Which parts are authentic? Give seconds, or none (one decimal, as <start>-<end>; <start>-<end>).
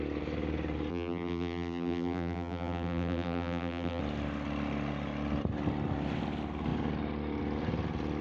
0.0-0.9; 4.0-8.2